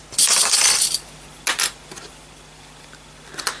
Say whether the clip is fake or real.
real